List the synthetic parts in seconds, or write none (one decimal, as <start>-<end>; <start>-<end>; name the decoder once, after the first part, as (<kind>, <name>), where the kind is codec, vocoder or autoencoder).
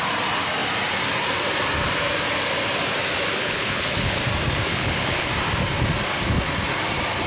3.4-4.2 (codec, HILCodec); 4.7-5.3